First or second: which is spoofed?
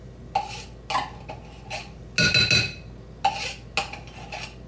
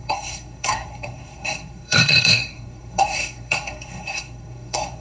second